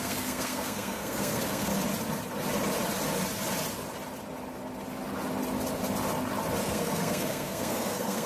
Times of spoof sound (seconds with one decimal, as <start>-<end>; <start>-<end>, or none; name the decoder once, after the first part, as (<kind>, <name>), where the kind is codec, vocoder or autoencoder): 0.0-1.7 (codec, SNAC); 6.6-8.3